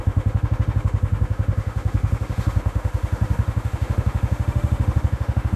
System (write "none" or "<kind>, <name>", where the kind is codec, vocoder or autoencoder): autoencoder, DAC-VAE